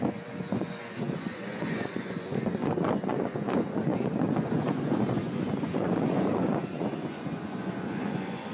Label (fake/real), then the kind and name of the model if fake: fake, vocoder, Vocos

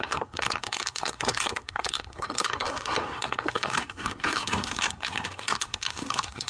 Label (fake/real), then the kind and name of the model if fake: fake, codec, SNAC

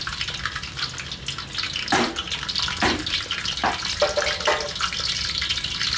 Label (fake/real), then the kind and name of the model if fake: real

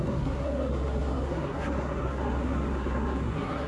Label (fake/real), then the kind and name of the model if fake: fake, codec, SNAC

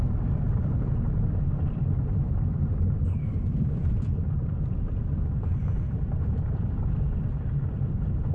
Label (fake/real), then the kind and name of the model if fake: fake, vocoder, BigVGAN v2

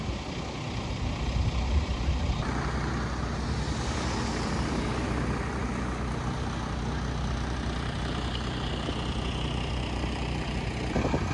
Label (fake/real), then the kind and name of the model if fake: real